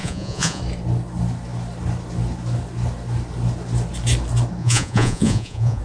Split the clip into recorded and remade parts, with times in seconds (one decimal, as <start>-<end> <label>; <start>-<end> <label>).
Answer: 0.0-0.6 remade; 0.6-4.6 recorded; 4.6-5.8 remade